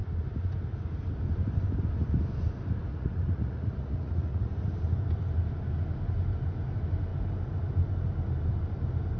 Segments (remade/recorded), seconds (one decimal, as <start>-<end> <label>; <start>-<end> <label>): 0.0-2.9 recorded; 2.9-4.5 remade; 4.5-9.2 recorded